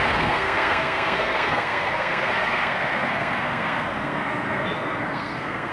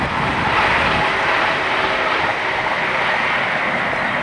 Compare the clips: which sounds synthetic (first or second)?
first